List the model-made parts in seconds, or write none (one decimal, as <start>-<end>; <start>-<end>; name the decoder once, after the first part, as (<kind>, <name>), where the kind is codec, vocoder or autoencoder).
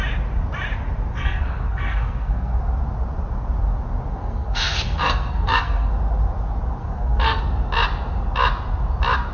1.1-2.6 (codec, SNAC); 4.2-5.9; 6.8-7.4